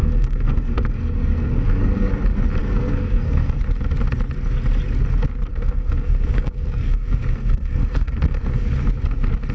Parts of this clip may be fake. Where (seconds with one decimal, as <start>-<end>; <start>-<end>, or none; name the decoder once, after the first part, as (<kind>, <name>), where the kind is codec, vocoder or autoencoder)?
0.0-2.2 (codec, SNAC); 2.6-3.6; 5.5-8.6